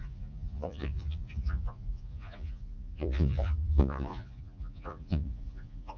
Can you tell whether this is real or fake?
fake